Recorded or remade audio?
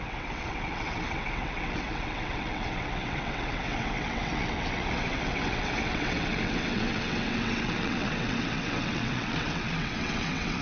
remade